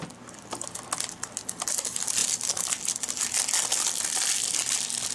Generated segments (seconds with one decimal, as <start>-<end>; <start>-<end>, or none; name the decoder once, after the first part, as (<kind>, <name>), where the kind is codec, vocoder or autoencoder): none

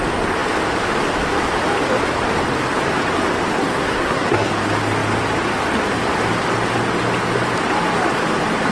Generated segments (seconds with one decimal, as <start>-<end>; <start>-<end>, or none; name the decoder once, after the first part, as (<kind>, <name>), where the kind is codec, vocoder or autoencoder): 3.5-4.5 (codec, SNAC)